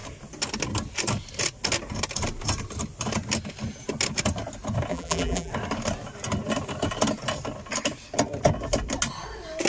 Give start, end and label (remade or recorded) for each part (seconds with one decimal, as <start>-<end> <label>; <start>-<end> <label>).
0.0-4.9 recorded; 4.9-5.5 remade; 5.5-9.7 recorded